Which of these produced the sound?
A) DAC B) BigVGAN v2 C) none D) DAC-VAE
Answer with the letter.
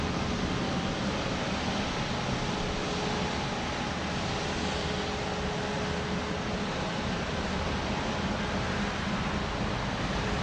C